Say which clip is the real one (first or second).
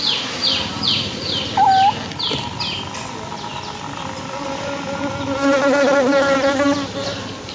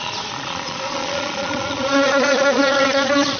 first